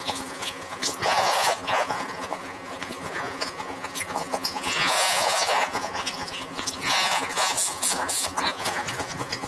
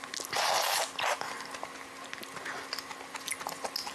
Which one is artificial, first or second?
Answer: first